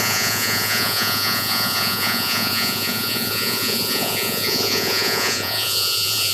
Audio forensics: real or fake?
fake